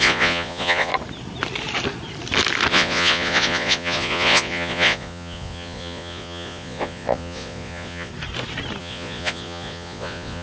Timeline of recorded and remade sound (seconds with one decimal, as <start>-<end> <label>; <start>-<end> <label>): 0.0-0.9 remade; 0.9-2.7 recorded; 2.7-8.1 remade; 8.1-8.8 recorded; 8.8-10.4 remade